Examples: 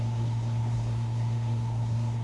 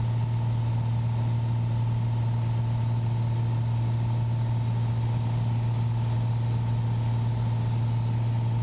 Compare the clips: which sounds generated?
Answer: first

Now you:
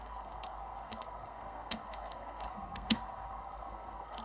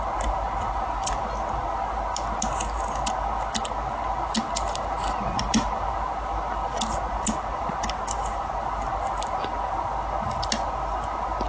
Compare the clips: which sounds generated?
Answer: first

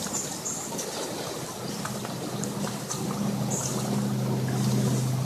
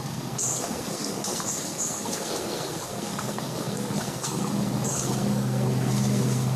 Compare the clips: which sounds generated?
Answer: second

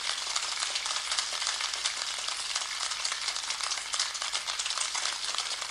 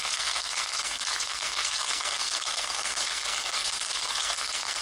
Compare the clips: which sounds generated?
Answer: second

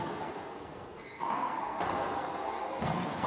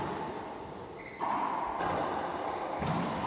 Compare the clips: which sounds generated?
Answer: first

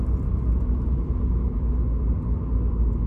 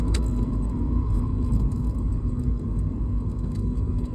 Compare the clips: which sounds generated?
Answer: second